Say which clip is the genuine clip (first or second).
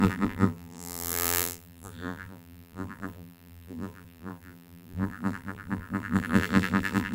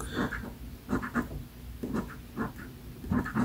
second